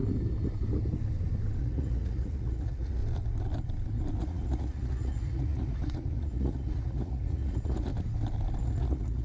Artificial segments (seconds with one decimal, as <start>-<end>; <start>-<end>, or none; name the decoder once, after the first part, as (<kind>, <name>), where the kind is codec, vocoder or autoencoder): 1.6-3.0 (vocoder, Vocos); 4.2-7.9; 8.6-9.2